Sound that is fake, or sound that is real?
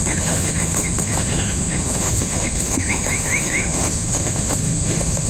fake